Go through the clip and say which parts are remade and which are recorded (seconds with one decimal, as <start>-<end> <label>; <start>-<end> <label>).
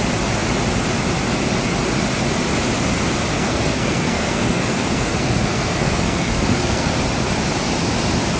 0.0-3.3 recorded; 3.3-6.9 remade; 6.9-8.4 recorded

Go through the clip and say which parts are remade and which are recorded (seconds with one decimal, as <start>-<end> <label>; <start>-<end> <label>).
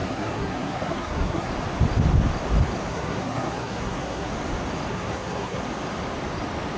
0.0-1.5 remade; 1.5-2.9 recorded; 2.9-4.3 remade; 4.3-4.9 recorded; 4.9-5.6 remade; 5.6-6.8 recorded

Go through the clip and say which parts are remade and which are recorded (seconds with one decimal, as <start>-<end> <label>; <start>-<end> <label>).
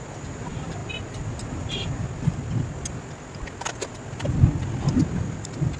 0.0-5.8 recorded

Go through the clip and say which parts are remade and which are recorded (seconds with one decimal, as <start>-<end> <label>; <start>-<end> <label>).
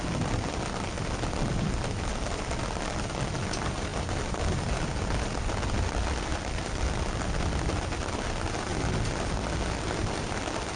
0.0-10.8 recorded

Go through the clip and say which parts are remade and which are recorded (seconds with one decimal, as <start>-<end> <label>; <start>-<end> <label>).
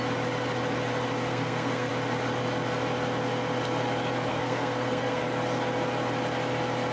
0.0-1.3 recorded; 1.3-1.9 remade; 1.9-4.3 recorded; 4.3-5.2 remade; 5.2-6.9 recorded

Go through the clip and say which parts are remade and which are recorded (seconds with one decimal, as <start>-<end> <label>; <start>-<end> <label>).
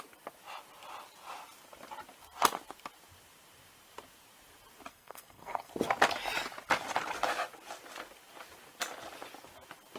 0.0-4.9 recorded; 4.9-5.7 remade; 5.7-10.0 recorded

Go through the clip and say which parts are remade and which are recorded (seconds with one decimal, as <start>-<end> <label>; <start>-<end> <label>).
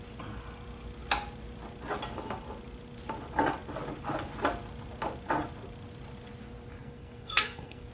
0.0-6.8 recorded; 6.8-7.9 remade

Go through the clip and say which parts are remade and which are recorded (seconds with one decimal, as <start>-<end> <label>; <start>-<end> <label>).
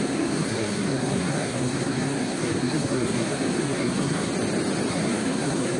0.0-4.3 remade; 4.3-4.9 recorded; 4.9-5.8 remade